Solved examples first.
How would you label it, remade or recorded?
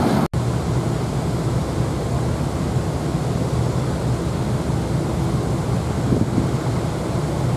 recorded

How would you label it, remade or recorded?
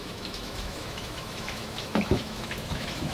remade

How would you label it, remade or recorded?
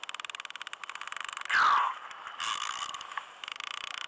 recorded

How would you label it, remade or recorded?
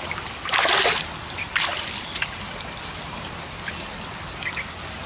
recorded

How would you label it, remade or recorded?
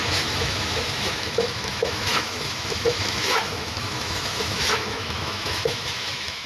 remade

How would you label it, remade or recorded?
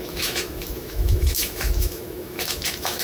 remade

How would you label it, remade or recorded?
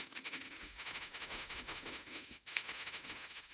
remade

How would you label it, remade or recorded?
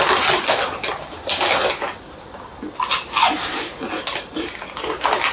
recorded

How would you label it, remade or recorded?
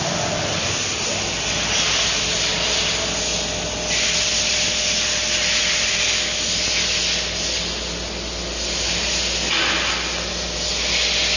recorded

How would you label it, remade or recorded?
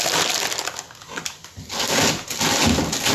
recorded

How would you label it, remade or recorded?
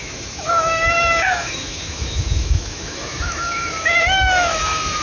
remade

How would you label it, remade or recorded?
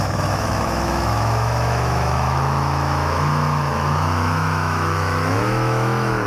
remade